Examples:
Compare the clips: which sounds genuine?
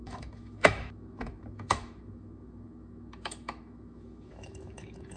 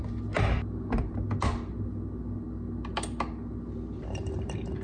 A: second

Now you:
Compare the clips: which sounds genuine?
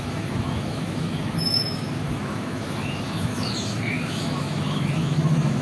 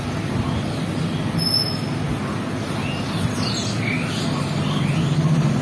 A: second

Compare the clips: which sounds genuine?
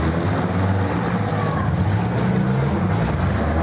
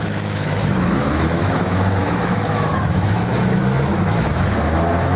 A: first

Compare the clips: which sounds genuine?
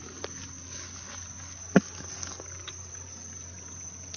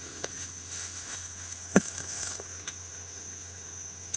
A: first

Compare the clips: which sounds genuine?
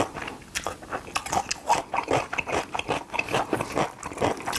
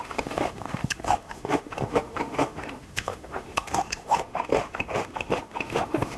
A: first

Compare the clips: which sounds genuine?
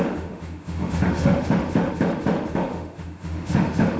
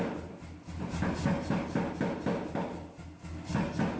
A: second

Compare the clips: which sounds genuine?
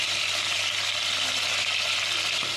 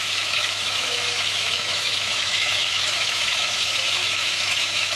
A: first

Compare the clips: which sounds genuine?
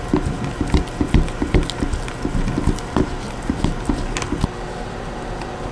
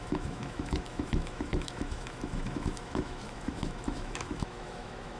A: first